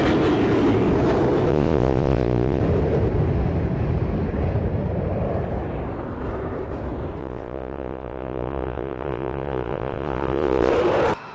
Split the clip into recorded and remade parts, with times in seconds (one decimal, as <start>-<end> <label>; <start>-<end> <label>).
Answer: 0.0-1.5 recorded; 1.5-2.6 remade; 2.6-7.2 recorded; 7.2-10.7 remade; 10.7-11.3 recorded